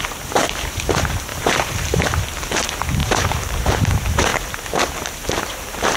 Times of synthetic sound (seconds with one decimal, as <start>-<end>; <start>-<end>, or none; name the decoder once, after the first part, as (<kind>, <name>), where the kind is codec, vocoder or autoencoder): 0.0-4.3 (vocoder, BigVGAN v2); 5.4-6.0

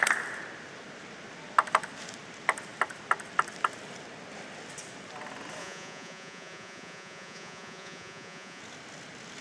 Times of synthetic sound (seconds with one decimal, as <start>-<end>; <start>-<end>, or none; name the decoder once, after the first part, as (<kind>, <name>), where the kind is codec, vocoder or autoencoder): 5.6-8.6 (vocoder, Vocos)

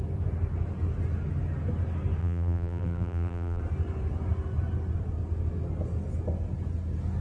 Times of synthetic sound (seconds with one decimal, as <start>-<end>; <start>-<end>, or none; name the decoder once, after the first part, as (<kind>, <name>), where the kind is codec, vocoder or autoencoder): 2.2-3.6 (vocoder, BigVGAN v2)

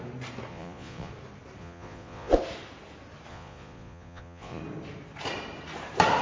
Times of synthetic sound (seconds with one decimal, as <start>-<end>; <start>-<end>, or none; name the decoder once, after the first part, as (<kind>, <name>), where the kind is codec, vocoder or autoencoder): 0.5-1.1 (vocoder, Vocos); 1.6-2.3; 3.3-4.6

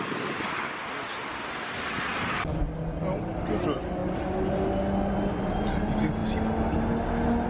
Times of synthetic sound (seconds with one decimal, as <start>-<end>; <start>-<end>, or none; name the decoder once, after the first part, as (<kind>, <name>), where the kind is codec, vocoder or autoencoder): none

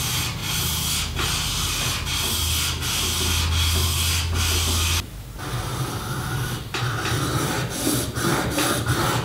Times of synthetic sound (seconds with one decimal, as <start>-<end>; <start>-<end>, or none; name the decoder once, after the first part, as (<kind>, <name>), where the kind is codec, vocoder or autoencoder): none